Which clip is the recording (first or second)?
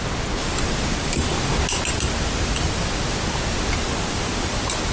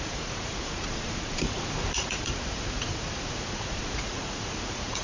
first